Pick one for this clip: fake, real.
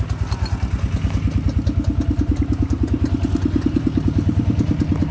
real